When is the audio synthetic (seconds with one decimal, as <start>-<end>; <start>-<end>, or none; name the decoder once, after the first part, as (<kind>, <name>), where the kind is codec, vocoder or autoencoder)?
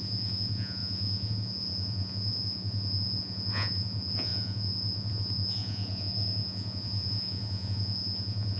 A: 0.0-8.6 (vocoder, Vocos)